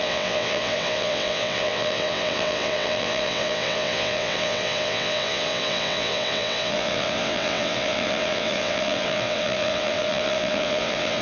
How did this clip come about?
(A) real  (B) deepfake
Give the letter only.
B